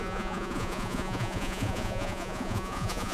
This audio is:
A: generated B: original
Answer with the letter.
A